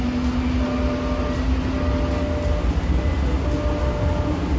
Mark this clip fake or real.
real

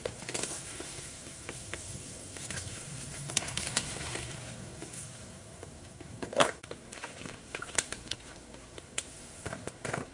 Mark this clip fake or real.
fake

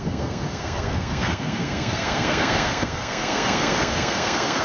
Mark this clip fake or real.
fake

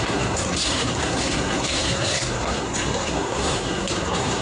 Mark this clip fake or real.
fake